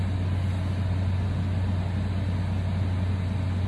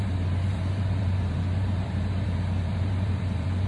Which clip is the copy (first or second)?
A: second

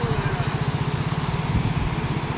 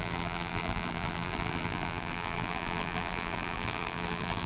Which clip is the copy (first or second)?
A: second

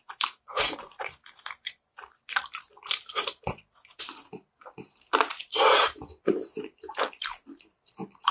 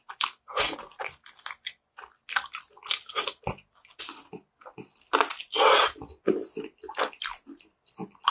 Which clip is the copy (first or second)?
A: first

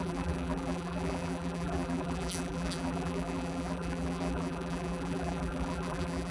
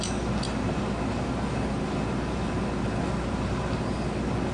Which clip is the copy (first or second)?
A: first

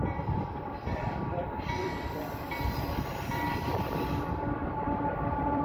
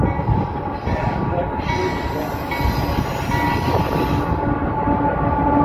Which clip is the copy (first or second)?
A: first